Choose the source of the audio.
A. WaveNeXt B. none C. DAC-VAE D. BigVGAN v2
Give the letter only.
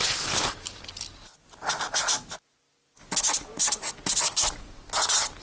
B